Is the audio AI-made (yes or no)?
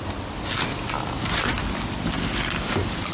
no